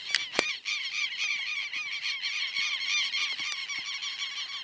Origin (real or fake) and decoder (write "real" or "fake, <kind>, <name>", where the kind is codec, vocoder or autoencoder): real